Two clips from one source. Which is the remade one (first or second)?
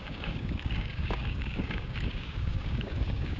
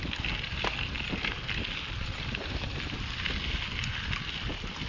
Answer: first